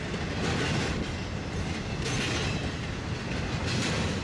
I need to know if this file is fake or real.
real